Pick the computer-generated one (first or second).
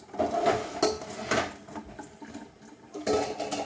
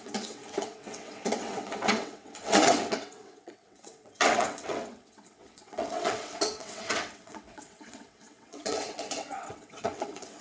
second